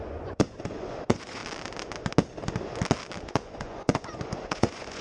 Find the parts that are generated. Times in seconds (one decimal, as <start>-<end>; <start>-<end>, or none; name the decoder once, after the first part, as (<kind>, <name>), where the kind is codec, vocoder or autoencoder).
0.0-1.4 (vocoder, Vocos); 3.2-5.0